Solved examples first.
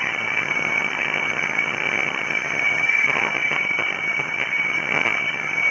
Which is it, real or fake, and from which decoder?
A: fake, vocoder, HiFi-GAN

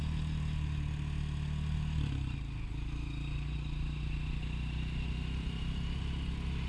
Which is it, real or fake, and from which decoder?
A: real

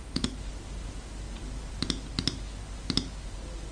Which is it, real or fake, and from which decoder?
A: real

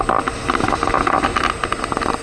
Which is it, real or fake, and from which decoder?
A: real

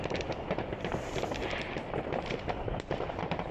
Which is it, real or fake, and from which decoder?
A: real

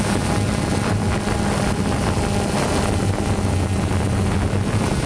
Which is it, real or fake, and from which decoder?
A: real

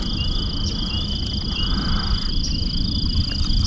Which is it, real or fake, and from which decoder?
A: fake, vocoder, BigVGAN v2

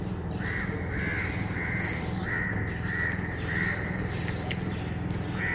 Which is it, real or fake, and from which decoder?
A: real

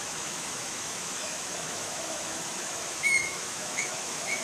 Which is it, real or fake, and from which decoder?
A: fake, autoencoder, DAC-VAE